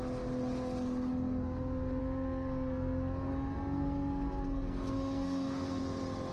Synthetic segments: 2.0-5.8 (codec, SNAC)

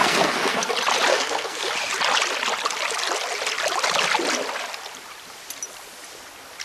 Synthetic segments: 0.0-0.7 (codec, SNAC); 1.1-1.7

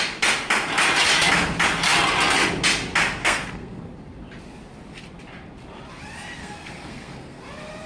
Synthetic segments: 3.2-3.9 (codec, SNAC); 6.4-7.4